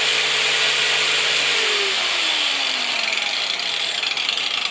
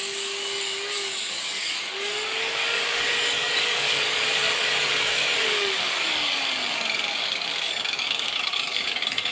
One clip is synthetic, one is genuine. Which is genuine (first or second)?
first